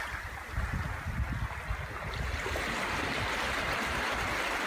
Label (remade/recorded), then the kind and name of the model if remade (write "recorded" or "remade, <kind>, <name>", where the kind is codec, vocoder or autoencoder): recorded